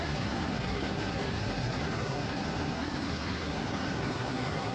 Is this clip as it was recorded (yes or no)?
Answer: no